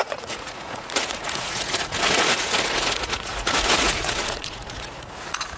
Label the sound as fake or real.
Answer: fake